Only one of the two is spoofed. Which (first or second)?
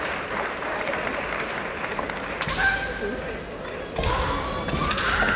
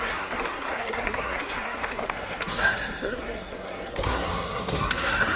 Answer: second